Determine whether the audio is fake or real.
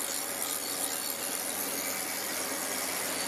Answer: real